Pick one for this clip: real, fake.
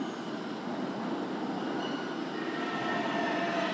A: real